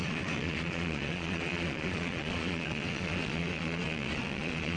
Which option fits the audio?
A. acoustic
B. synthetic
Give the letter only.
B